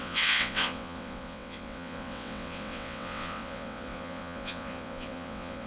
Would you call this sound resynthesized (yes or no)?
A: yes